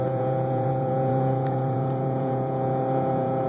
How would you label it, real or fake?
fake